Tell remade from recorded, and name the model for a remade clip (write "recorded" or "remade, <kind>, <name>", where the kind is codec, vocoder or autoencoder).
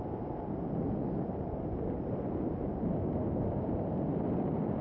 recorded